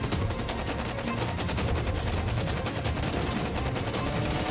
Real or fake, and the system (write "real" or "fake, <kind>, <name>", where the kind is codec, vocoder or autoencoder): real